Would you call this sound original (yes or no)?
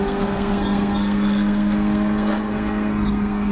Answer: no